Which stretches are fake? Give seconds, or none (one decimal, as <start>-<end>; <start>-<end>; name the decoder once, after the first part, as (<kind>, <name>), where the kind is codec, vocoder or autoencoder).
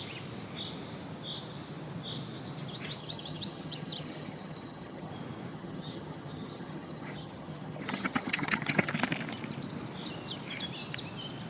3.0-5.1 (vocoder, HiFi-GAN); 5.5-8.9